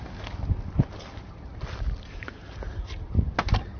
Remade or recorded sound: recorded